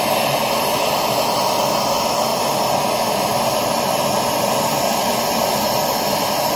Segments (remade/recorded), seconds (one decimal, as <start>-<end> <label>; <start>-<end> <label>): 0.0-6.6 recorded